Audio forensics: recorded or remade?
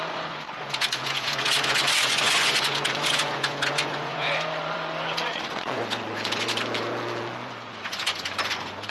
remade